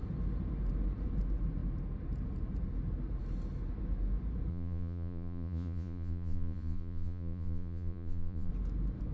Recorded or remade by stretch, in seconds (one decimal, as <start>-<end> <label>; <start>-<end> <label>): 0.0-4.5 recorded; 4.5-8.5 remade; 8.5-9.1 recorded